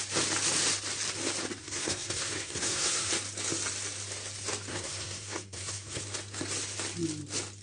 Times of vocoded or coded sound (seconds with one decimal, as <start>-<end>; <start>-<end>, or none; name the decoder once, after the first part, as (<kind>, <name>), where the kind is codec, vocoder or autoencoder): 1.6-3.1 (codec, SNAC); 4.7-6.0